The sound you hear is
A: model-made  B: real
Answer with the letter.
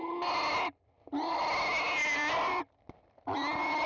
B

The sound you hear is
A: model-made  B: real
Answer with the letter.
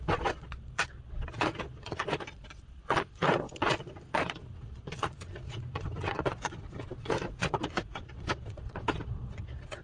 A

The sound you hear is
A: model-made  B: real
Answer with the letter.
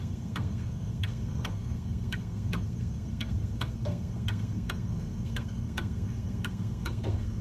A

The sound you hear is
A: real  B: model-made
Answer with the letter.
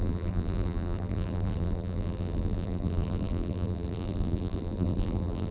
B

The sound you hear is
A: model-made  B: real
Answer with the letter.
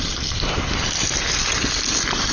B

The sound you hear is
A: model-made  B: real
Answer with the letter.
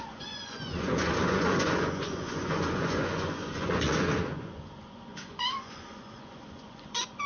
A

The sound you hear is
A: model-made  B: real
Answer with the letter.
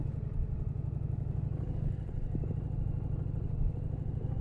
B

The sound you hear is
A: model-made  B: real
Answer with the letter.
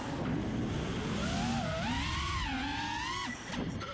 B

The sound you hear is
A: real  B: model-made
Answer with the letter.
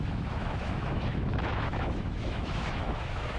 B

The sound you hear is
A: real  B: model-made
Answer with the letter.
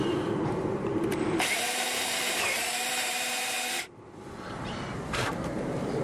B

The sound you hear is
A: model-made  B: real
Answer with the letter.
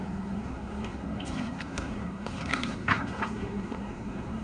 A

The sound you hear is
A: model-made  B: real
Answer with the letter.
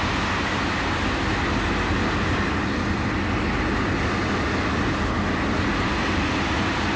B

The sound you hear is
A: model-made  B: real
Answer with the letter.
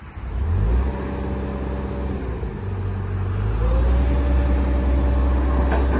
B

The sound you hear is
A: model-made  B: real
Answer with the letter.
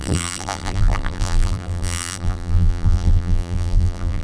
A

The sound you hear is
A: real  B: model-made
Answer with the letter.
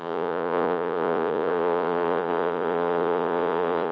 B